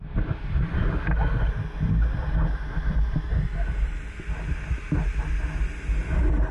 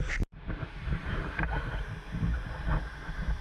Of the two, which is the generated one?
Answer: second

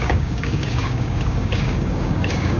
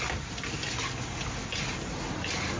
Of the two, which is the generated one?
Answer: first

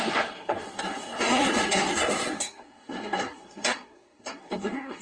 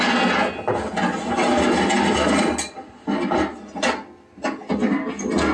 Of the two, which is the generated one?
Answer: first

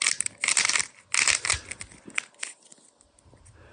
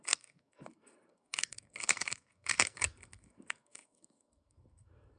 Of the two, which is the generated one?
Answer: second